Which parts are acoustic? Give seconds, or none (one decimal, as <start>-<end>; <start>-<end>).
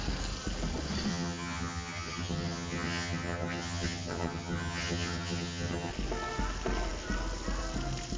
0.0-1.1; 5.9-8.2